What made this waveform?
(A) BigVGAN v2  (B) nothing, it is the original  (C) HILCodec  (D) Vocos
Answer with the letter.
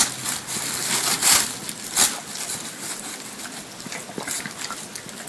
B